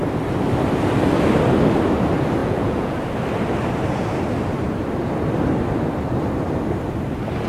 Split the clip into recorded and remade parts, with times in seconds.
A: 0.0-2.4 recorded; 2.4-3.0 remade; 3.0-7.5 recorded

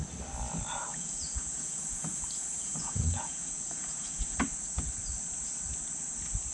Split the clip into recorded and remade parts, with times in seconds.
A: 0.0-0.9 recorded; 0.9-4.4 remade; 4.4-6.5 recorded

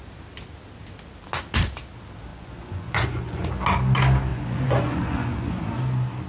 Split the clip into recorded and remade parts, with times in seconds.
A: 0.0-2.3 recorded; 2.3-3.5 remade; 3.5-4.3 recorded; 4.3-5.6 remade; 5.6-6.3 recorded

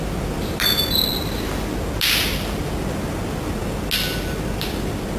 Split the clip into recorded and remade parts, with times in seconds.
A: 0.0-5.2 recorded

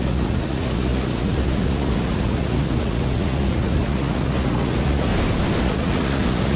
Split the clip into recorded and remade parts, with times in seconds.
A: 0.0-5.1 remade; 5.1-5.6 recorded; 5.6-6.6 remade